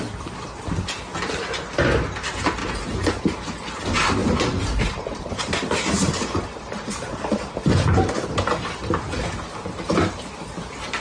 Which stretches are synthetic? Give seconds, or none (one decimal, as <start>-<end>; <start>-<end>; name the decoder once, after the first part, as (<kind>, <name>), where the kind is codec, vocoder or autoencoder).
4.2-9.0 (vocoder, BigVGAN v2)